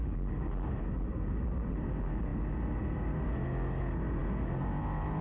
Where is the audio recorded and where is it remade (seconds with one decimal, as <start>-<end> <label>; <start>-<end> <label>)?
0.0-5.2 recorded